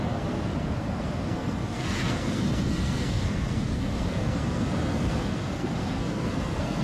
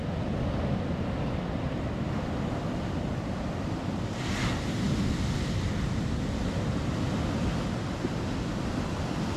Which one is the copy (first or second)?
first